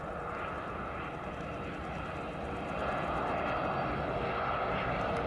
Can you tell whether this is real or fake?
real